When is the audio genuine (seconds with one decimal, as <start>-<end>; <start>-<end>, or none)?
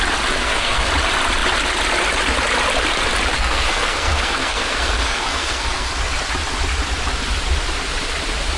0.0-0.4; 0.9-3.3; 5.9-8.6